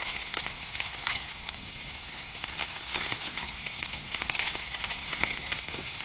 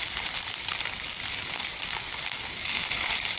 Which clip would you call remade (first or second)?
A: first